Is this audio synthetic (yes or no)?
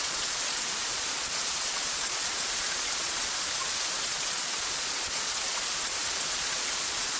yes